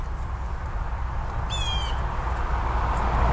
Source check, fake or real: real